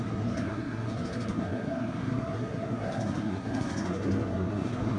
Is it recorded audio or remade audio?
remade